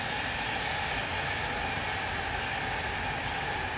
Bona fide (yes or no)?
yes